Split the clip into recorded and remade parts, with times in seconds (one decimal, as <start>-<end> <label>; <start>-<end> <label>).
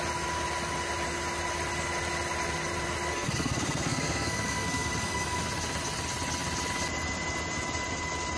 0.0-3.1 recorded; 3.1-5.4 remade; 5.4-8.4 recorded